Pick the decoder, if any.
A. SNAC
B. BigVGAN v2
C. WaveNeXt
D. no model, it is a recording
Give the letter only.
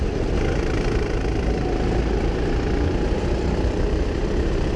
D